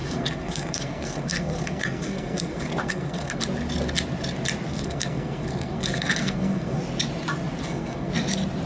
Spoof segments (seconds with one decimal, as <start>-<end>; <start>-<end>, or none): 0.0-3.4; 4.7-6.8; 7.6-8.1